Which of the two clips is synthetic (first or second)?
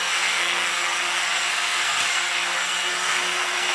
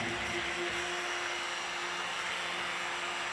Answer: first